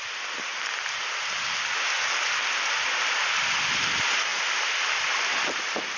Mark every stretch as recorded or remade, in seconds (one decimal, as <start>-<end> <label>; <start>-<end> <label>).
0.0-6.0 recorded